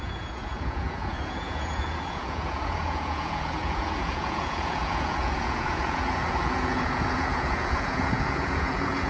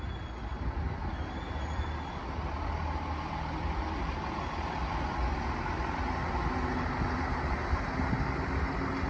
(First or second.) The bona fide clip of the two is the second